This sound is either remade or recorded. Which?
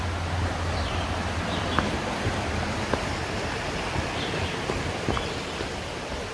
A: recorded